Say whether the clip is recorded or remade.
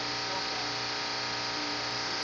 recorded